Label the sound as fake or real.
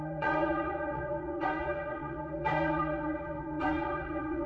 fake